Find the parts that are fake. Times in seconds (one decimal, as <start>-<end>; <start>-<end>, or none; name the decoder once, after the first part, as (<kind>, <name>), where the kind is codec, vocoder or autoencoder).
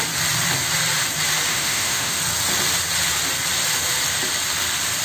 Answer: 1.5-2.2 (autoencoder, DAC-VAE)